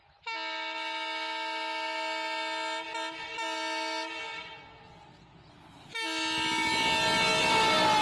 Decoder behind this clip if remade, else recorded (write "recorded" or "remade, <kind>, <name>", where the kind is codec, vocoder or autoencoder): recorded